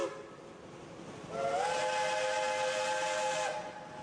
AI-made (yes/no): no